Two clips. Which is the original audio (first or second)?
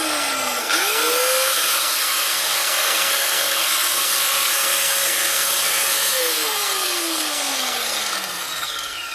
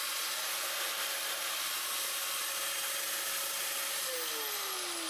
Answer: second